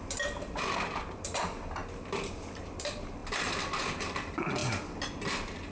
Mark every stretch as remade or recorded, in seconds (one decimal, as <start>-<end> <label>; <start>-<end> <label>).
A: 0.0-3.2 remade; 3.2-3.7 recorded; 3.7-4.6 remade; 4.6-5.3 recorded; 5.3-5.7 remade